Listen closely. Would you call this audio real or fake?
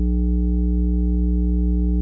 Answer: real